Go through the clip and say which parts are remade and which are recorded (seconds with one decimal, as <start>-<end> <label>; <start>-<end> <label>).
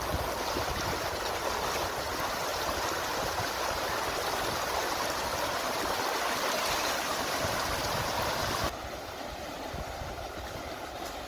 0.0-11.3 recorded